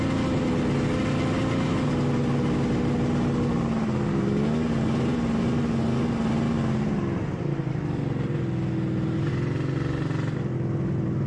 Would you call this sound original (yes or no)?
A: yes